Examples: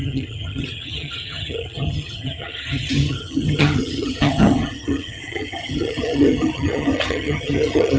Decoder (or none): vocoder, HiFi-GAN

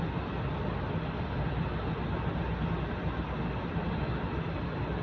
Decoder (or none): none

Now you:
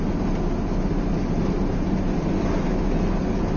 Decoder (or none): none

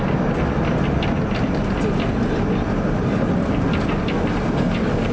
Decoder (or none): none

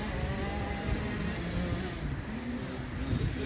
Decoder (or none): none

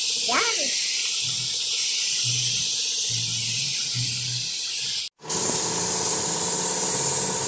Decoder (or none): none